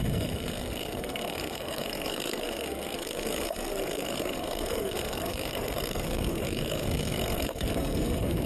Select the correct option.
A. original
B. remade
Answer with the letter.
B